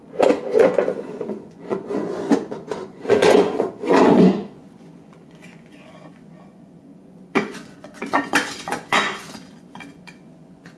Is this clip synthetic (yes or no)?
yes